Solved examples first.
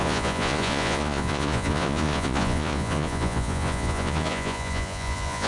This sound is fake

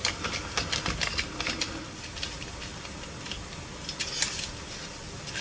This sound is real